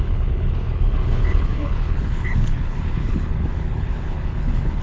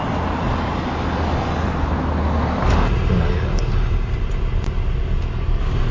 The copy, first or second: first